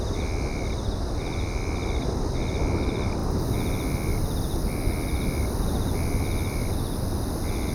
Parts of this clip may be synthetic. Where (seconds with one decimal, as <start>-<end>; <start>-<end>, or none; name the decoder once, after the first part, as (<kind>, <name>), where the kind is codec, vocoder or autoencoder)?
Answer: none